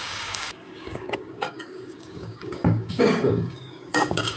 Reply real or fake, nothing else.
fake